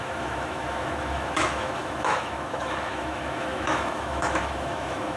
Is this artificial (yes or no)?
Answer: yes